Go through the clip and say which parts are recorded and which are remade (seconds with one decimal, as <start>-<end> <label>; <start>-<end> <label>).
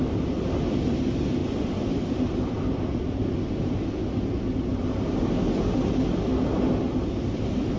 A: 0.0-7.8 recorded